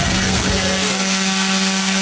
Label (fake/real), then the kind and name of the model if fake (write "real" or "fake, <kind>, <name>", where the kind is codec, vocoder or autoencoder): fake, codec, SNAC